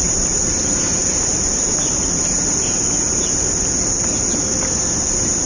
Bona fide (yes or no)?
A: yes